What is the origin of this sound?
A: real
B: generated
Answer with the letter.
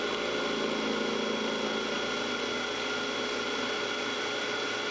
A